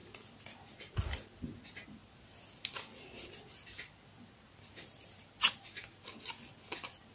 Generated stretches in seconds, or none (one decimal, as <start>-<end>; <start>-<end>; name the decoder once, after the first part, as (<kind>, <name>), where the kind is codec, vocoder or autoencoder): none